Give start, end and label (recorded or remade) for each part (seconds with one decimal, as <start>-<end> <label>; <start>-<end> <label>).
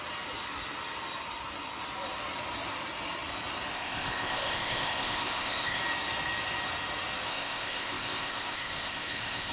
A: 0.0-3.7 recorded; 3.7-5.8 remade; 5.8-7.3 recorded; 7.3-9.5 remade